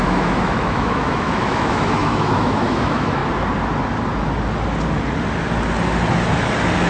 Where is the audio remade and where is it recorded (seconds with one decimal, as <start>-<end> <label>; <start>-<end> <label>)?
0.0-3.2 remade; 3.2-6.9 recorded